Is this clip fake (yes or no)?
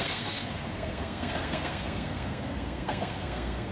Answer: yes